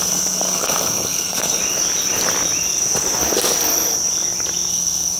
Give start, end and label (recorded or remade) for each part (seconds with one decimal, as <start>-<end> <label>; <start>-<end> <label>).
0.0-1.6 remade; 1.6-4.7 recorded; 4.7-5.2 remade